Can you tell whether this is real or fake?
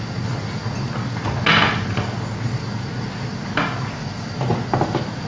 real